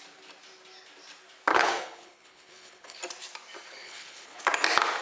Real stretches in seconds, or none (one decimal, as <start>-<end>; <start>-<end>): 0.0-1.5; 3.0-3.8; 4.4-5.0